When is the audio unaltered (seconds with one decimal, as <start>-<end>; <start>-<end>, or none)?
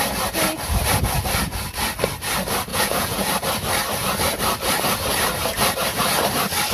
0.0-2.7; 3.3-6.7